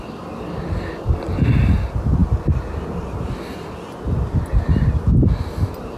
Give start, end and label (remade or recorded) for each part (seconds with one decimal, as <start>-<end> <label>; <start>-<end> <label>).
0.0-6.0 recorded